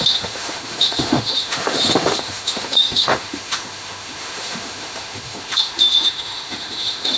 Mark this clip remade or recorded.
remade